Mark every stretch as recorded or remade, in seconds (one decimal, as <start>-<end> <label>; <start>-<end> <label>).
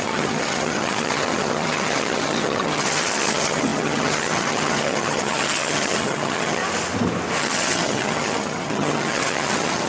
0.0-6.6 remade; 6.6-7.4 recorded; 7.4-9.9 remade